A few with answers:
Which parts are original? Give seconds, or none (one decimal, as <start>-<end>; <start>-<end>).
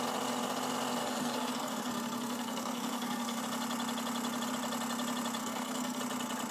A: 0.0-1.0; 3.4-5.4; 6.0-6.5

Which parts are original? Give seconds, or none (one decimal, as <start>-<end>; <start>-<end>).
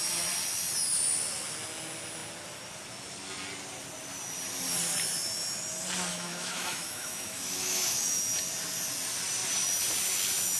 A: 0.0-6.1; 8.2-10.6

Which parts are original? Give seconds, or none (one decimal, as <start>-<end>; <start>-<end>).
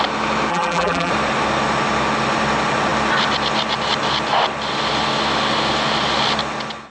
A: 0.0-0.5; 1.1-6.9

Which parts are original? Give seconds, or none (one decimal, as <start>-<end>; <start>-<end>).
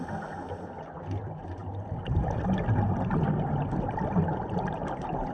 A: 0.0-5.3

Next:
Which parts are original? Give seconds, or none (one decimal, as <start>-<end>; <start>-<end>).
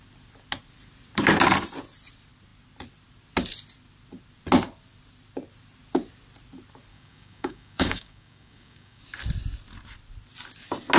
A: 0.0-6.9; 9.0-11.0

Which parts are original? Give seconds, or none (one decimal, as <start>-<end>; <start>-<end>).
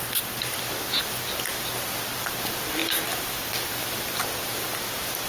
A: 0.0-5.3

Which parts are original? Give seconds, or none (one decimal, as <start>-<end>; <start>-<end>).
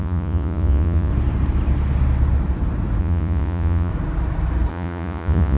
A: 1.1-3.0; 3.9-4.7